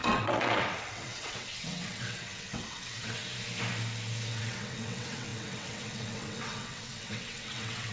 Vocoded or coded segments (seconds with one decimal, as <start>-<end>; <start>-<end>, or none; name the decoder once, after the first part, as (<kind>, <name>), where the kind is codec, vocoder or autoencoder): 0.0-3.2 (vocoder, WaveNeXt); 4.3-7.9